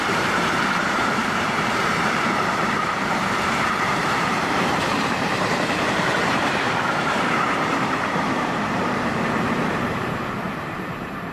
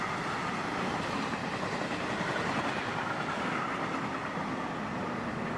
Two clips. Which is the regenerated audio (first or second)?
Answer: first